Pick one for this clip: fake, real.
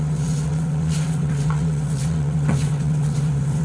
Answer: fake